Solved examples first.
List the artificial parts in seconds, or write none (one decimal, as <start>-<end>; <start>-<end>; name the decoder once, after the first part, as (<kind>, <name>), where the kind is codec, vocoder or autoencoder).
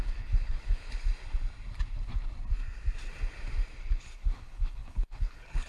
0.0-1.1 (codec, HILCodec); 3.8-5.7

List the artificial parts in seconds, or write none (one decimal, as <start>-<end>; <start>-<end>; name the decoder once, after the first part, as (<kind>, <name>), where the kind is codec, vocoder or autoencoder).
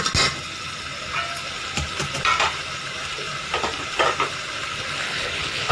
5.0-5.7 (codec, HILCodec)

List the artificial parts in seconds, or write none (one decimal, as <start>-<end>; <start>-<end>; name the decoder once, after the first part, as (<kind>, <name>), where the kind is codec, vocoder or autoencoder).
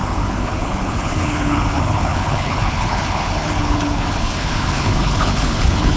0.0-6.0 (codec, HILCodec)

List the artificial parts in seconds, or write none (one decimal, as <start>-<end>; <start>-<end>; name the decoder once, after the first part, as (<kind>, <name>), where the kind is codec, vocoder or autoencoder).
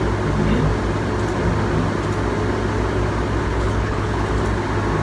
3.4-4.3 (codec, HILCodec)